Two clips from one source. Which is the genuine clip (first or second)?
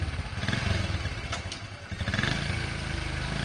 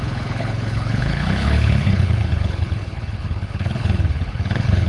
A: first